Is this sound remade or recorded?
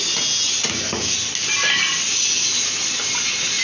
recorded